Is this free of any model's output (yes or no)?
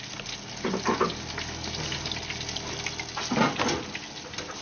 yes